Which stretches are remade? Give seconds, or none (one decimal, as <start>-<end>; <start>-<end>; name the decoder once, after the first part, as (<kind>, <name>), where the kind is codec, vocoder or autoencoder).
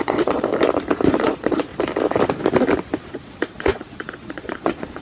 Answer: 0.0-0.5 (vocoder, Vocos); 1.1-1.7; 3.1-5.0